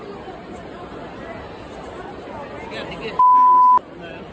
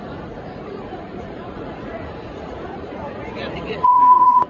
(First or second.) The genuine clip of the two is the first